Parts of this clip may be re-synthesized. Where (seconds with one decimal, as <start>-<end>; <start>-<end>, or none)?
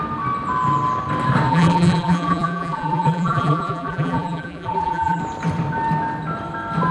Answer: 1.5-5.2